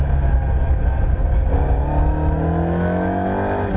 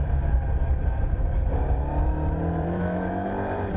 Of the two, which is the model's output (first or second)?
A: second